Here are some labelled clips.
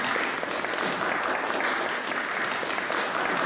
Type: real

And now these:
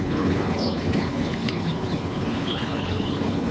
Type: fake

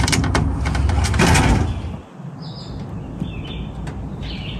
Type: real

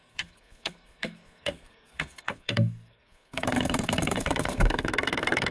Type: fake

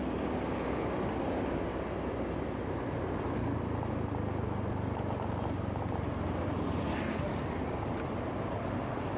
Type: real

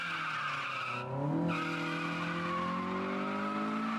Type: real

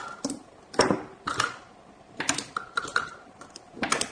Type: real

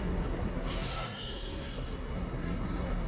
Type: fake